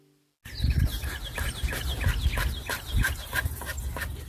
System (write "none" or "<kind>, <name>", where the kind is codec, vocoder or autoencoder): none